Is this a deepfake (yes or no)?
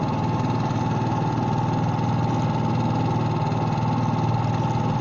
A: no